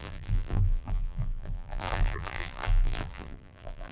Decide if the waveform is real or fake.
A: fake